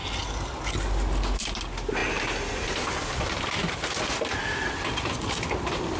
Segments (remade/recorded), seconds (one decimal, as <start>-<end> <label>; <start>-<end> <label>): 0.0-6.0 recorded